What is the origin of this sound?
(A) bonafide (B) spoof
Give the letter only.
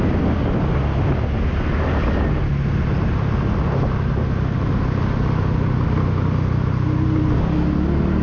A